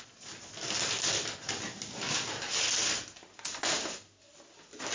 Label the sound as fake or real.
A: real